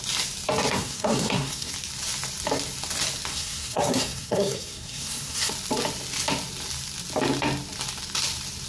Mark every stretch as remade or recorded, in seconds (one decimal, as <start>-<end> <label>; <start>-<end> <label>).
0.0-0.7 recorded; 0.7-1.7 remade; 1.7-3.3 recorded; 3.3-5.5 remade; 5.5-8.7 recorded